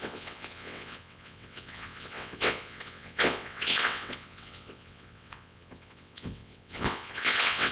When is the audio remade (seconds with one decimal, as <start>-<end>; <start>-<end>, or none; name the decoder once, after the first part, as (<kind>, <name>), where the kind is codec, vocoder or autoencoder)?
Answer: 0.0-7.7 (vocoder, WaveNeXt)